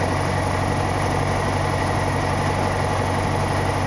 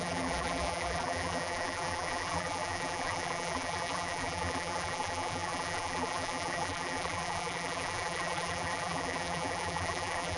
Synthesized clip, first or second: second